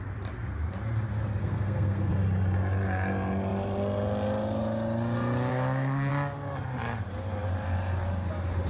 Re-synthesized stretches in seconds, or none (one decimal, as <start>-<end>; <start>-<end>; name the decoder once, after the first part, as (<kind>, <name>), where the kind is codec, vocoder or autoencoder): 1.4-2.1 (codec, SNAC); 5.5-6.1